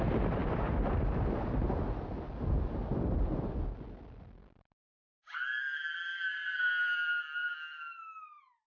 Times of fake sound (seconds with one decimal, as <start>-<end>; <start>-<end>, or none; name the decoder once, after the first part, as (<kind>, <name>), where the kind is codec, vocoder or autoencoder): none